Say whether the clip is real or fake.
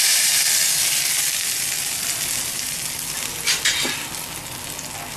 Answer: real